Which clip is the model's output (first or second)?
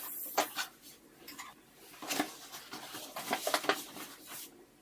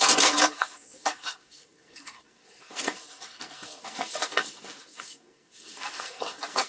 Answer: second